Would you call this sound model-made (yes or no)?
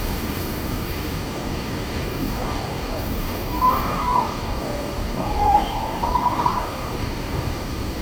yes